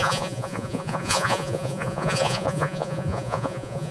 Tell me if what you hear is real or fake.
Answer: fake